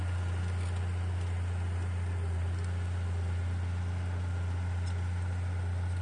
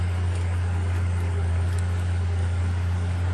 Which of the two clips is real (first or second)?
first